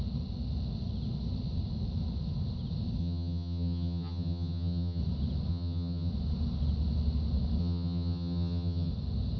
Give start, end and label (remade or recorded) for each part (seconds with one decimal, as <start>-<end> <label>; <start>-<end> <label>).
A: 0.0-3.0 recorded; 3.0-5.0 remade; 5.0-5.5 recorded; 5.5-6.1 remade; 6.1-7.6 recorded; 7.6-8.9 remade; 8.9-9.4 recorded